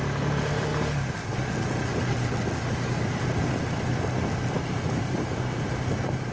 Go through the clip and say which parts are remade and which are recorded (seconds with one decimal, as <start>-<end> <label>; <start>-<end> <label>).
0.0-0.7 remade; 0.7-4.5 recorded; 4.5-6.3 remade